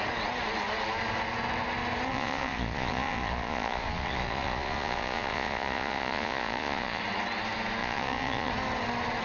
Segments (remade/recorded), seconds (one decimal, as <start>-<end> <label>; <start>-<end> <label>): 0.0-2.1 recorded; 2.1-7.0 remade; 7.0-7.8 recorded; 7.8-8.5 remade; 8.5-9.2 recorded